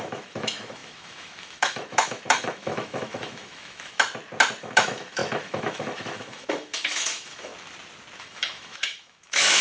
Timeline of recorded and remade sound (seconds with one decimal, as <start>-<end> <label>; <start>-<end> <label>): 0.0-4.1 remade; 4.1-4.6 recorded; 4.6-7.5 remade; 7.5-8.2 recorded; 8.2-9.6 remade